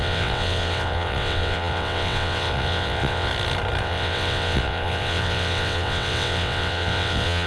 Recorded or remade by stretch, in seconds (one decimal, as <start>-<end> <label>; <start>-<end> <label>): 0.0-3.3 remade; 3.3-3.8 recorded; 3.8-7.5 remade